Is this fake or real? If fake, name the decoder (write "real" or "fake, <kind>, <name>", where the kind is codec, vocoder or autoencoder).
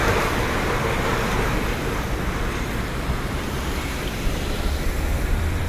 fake, vocoder, BigVGAN v2